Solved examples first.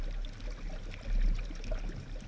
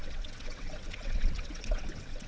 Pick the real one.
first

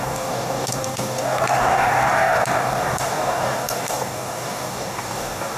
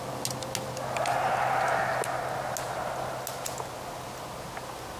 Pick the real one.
second